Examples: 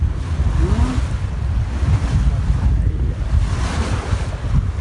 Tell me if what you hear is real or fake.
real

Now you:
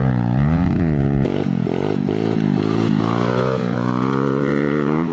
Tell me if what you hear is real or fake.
fake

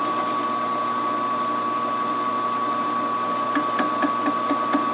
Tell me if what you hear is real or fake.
real